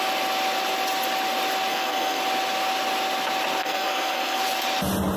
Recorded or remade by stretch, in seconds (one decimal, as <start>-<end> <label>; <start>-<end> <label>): 0.0-1.7 recorded; 1.7-2.2 remade; 2.2-3.6 recorded; 3.6-4.4 remade; 4.4-5.2 recorded